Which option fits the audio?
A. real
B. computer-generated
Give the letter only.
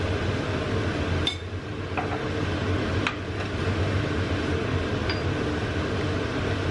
A